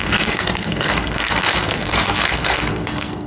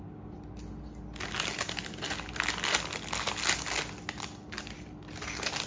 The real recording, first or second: second